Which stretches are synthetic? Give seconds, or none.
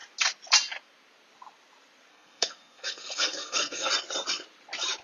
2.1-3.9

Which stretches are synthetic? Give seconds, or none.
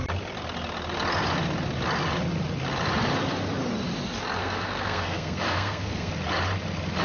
4.4-6.1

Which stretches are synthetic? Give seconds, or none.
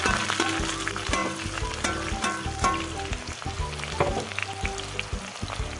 none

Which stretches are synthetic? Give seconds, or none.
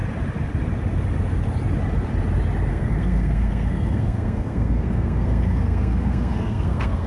2.7-7.1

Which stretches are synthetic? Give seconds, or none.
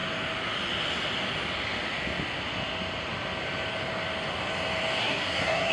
5.0-5.7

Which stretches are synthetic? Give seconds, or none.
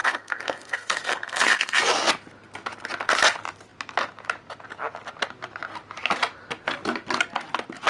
0.0-1.8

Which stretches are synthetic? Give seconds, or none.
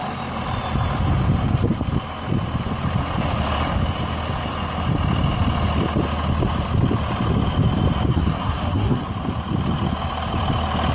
8.1-9.1